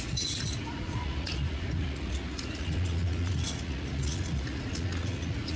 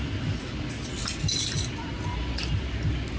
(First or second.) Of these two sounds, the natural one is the second